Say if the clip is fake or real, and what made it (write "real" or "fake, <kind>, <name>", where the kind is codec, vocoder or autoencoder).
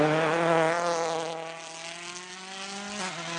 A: real